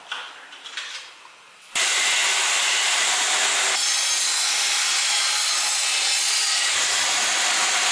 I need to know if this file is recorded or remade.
recorded